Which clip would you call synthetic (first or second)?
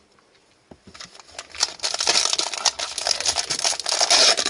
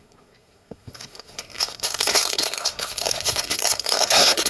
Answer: second